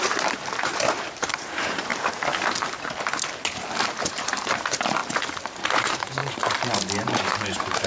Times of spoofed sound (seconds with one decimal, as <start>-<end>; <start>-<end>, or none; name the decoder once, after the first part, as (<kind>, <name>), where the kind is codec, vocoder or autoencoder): 0.0-1.9 (vocoder, BigVGAN v2); 4.0-5.0; 5.6-7.9